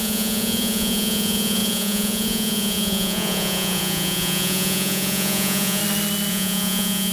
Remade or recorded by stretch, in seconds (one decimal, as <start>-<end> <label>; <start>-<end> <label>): 0.0-5.8 remade; 5.8-6.3 recorded; 6.3-7.1 remade